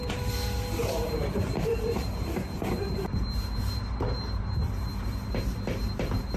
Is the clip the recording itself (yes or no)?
no